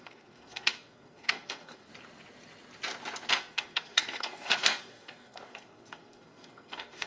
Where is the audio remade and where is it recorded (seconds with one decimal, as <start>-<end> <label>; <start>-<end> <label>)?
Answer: 0.0-1.9 remade; 1.9-3.3 recorded; 3.3-7.1 remade